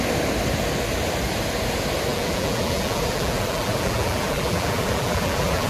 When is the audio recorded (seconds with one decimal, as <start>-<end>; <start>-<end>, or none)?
0.0-2.1